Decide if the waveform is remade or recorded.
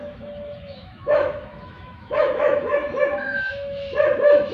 remade